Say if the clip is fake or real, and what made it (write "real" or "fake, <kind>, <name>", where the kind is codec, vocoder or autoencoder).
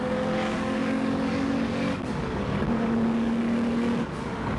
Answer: fake, codec, DAC